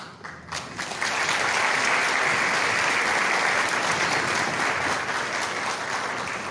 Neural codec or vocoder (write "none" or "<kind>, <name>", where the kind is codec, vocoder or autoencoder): none